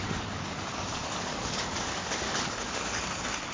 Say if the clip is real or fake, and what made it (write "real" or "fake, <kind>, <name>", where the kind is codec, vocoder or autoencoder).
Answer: fake, codec, DAC